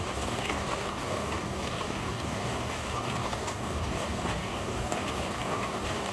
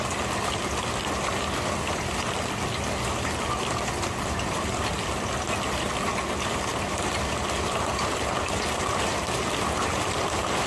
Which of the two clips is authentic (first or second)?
second